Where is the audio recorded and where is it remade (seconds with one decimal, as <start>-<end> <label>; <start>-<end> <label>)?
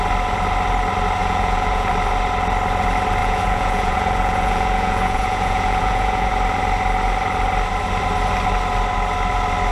0.0-1.2 recorded; 1.2-1.9 remade; 1.9-3.2 recorded; 3.2-6.3 remade; 6.3-9.7 recorded